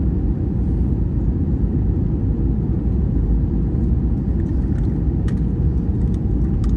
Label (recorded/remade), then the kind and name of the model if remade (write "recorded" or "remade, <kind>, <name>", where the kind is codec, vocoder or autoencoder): recorded